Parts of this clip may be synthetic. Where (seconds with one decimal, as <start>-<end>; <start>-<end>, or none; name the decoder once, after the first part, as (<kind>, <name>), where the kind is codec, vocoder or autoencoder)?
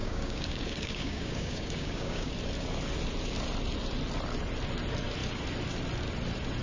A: 0.0-2.3 (codec, DAC)